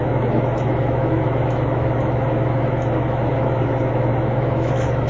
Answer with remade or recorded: remade